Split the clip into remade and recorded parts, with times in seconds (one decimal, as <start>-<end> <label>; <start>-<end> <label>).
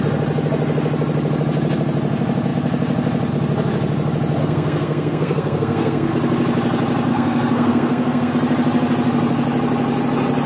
0.0-4.4 recorded; 4.4-6.1 remade; 6.1-7.1 recorded; 7.1-8.3 remade; 8.3-10.5 recorded